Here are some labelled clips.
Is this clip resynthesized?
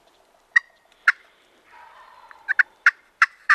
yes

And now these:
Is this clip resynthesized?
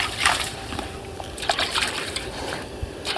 yes